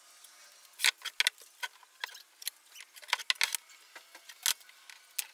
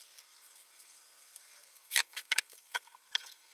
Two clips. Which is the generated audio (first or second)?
second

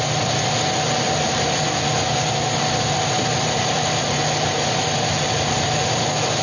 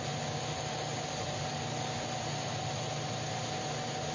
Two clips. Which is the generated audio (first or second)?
first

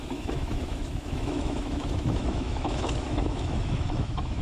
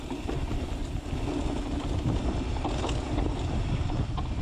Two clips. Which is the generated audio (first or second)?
first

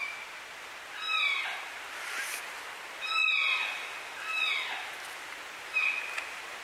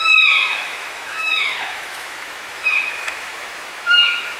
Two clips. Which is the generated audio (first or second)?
second